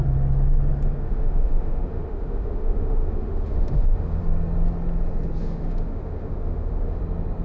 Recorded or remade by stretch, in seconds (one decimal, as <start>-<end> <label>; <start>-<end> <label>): 0.0-1.0 recorded; 1.0-4.2 remade; 4.2-5.4 recorded; 5.4-7.0 remade; 7.0-7.4 recorded